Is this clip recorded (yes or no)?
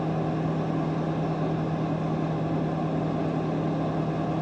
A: yes